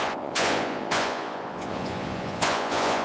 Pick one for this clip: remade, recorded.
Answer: remade